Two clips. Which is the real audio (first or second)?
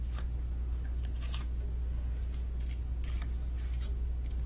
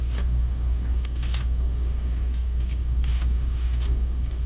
first